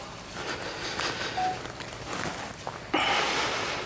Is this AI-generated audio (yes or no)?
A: no